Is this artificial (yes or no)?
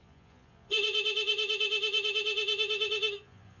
yes